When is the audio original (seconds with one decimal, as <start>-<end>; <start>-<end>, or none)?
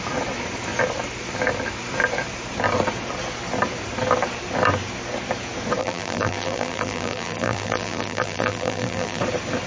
0.0-5.8; 9.2-9.7